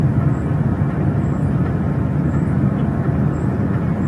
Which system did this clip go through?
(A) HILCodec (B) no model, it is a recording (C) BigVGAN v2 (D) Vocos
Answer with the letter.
B